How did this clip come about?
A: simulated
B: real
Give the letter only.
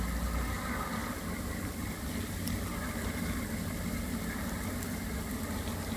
B